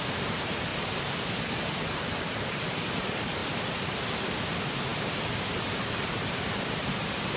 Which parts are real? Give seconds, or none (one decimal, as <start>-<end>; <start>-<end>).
0.7-1.7; 3.4-3.9